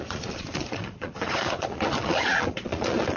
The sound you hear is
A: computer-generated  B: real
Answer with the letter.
A